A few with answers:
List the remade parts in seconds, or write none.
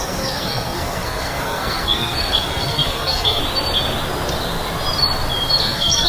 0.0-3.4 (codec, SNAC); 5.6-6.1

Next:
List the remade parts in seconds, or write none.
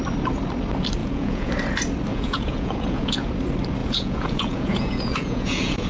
1.0-1.5 (vocoder, Vocos); 2.1-3.3; 3.8-5.9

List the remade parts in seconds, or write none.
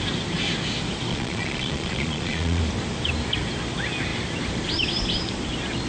1.1-2.6 (vocoder, Vocos)